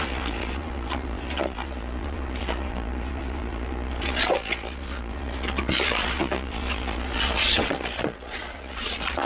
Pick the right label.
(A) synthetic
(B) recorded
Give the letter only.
A